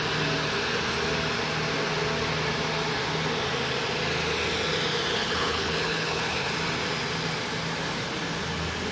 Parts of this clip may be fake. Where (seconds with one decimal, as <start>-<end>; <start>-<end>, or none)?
5.1-6.5